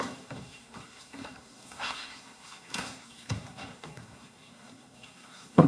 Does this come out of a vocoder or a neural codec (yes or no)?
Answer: yes